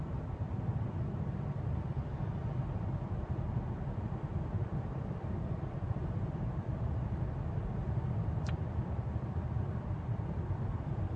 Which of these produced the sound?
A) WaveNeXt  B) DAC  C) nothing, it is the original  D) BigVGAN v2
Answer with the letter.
D